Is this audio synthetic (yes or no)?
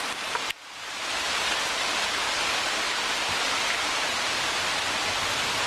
no